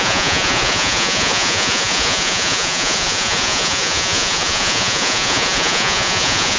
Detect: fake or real fake